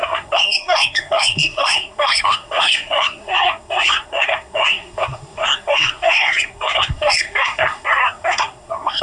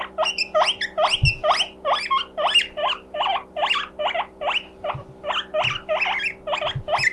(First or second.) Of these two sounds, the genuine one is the second